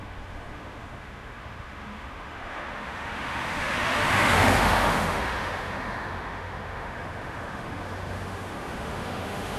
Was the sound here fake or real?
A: fake